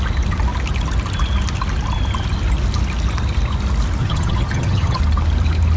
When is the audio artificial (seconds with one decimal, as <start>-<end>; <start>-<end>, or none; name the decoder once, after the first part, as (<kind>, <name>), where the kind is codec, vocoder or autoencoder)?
4.0-5.0 (vocoder, HiFi-GAN)